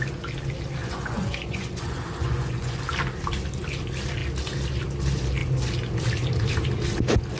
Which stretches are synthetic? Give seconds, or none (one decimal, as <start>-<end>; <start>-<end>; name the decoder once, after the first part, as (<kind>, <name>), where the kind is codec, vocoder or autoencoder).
0.8-2.8 (vocoder, Vocos)